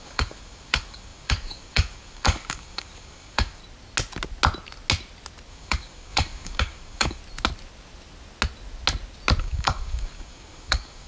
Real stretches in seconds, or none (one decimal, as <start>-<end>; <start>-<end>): 3.6-5.5; 7.2-9.4